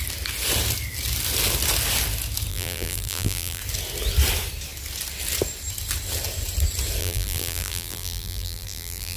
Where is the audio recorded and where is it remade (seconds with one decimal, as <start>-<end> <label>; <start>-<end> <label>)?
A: 0.0-2.5 recorded; 2.5-3.6 remade; 3.6-7.0 recorded; 7.0-9.2 remade